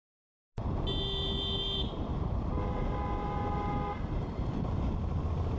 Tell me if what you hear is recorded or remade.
recorded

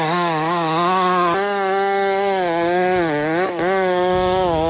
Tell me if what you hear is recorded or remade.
remade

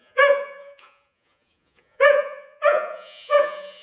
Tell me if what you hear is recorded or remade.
remade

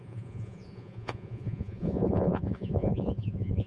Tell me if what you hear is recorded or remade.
remade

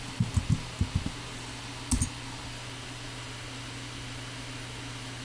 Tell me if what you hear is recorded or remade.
recorded